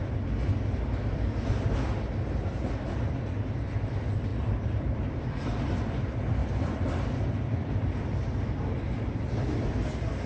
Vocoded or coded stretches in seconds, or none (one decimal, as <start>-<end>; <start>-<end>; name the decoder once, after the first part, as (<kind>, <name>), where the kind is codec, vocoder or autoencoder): 4.3-5.8 (vocoder, BigVGAN v2); 6.4-8.6